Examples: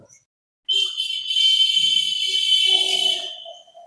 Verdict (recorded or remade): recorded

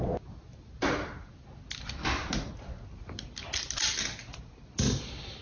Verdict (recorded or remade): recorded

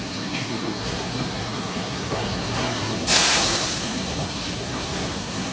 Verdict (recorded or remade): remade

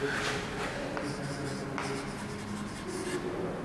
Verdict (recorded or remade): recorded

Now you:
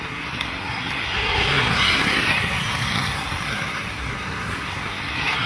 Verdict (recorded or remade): remade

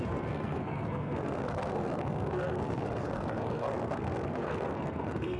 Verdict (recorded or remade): remade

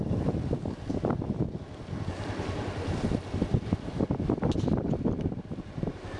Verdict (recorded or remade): recorded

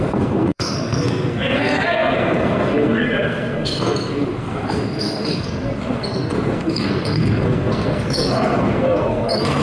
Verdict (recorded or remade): remade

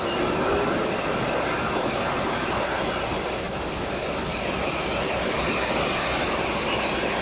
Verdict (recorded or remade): recorded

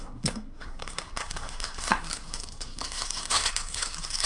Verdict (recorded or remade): remade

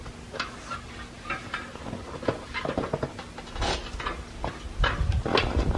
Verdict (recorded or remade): recorded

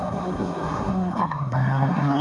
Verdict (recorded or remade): remade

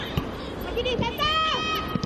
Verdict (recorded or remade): recorded